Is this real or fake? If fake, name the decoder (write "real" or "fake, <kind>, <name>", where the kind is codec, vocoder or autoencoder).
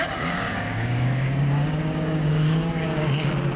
fake, codec, DAC